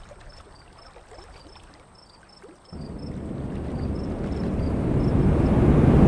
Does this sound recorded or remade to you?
recorded